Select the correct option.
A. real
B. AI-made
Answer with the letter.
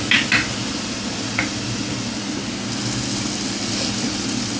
A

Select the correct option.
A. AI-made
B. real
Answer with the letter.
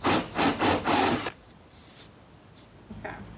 B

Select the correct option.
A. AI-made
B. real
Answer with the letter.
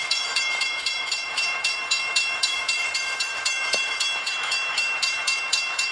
A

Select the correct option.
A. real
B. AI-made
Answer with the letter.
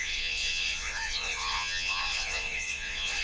B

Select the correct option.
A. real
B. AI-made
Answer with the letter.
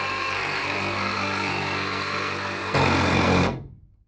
B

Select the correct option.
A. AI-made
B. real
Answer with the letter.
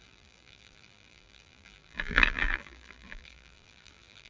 A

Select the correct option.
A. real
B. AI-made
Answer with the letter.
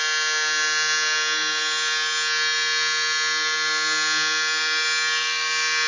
A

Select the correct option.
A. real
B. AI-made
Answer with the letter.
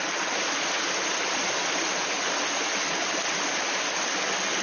A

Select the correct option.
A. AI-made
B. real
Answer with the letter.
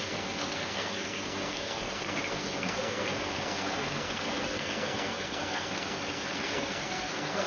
A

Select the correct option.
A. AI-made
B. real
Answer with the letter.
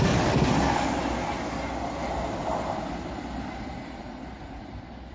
B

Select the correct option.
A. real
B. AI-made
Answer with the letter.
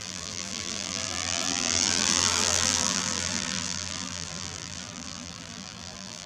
B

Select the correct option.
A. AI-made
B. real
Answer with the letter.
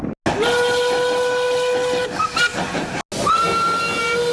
B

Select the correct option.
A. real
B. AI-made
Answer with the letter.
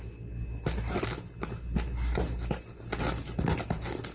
A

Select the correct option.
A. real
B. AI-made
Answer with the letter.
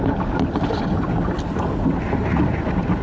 A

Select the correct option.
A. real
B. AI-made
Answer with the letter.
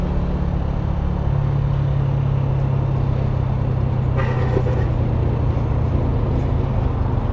A